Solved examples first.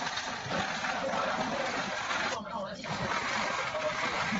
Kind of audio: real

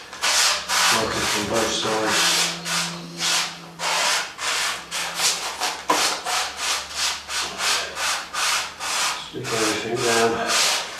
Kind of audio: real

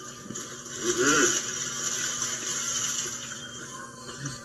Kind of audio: fake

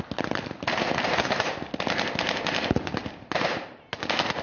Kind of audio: real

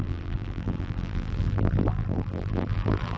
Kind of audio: fake